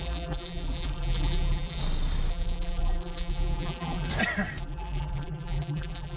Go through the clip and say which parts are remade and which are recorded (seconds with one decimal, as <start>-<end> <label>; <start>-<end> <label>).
0.0-1.8 remade; 1.8-2.3 recorded; 2.3-4.1 remade; 4.1-4.6 recorded; 4.6-6.2 remade